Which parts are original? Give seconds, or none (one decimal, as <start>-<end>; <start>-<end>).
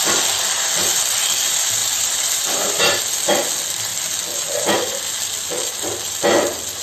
0.0-1.8; 3.0-6.8